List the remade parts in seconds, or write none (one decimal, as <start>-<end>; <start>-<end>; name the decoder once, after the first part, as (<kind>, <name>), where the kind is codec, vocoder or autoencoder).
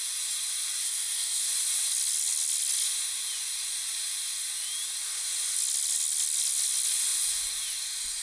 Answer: 0.8-1.4 (codec, SNAC)